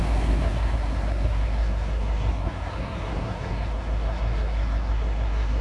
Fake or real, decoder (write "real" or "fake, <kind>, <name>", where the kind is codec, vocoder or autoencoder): fake, codec, SNAC